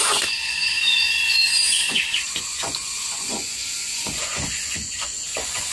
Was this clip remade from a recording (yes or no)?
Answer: yes